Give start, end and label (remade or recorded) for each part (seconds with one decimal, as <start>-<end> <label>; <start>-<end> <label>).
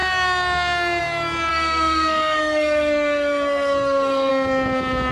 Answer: 0.0-1.5 recorded; 1.5-4.3 remade; 4.3-5.1 recorded